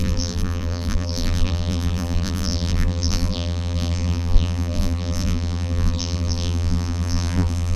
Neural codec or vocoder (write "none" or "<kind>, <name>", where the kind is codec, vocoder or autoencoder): vocoder, BigVGAN v2